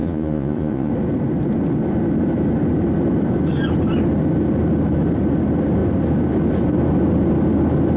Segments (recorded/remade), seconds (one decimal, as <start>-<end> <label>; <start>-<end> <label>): 0.0-0.9 remade; 0.9-8.0 recorded